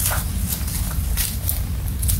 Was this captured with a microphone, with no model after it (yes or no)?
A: yes